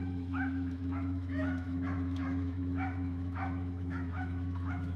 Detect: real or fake fake